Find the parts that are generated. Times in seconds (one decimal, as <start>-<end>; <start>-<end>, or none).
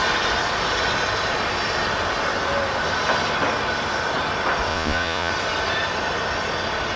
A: 4.7-5.3